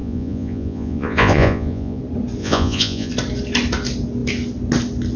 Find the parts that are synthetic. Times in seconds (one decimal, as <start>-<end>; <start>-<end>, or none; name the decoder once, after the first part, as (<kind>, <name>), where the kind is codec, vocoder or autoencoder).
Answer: 0.0-2.0 (vocoder, Vocos); 2.4-3.1